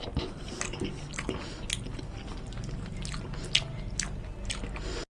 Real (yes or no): yes